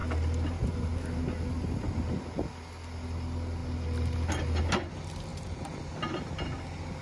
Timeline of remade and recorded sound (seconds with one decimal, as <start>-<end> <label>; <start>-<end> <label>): 0.0-5.3 recorded; 5.3-5.9 remade; 5.9-7.0 recorded